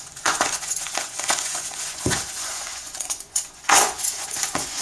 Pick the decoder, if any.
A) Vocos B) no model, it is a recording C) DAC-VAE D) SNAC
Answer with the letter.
A